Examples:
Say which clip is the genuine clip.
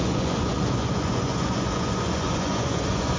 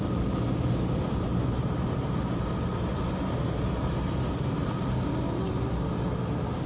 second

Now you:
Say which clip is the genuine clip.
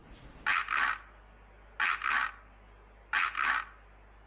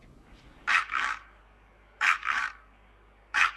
first